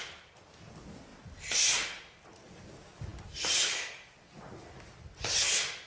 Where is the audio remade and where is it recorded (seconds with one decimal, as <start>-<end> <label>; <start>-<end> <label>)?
0.0-5.9 recorded